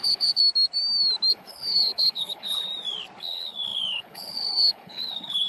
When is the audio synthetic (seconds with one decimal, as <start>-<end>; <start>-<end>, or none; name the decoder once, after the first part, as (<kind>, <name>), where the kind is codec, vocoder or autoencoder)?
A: 0.0-0.4 (codec, HILCodec); 1.3-2.7; 3.2-5.5